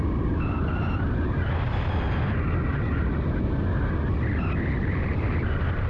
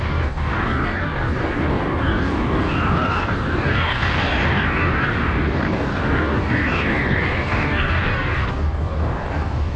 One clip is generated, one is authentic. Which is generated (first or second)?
second